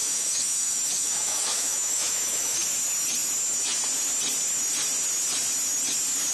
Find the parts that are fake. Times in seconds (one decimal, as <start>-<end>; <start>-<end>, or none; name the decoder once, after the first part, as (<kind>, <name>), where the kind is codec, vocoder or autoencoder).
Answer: 0.0-2.7 (autoencoder, DAC-VAE)